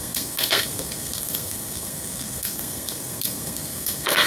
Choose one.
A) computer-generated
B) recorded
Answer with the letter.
A